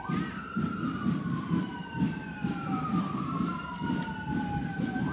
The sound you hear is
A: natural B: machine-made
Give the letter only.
B